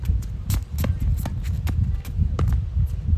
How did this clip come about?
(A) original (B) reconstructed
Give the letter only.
A